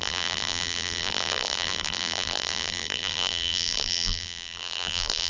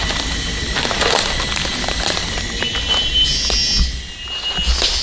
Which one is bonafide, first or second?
second